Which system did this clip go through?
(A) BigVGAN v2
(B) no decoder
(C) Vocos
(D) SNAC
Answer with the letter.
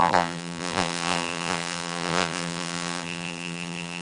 A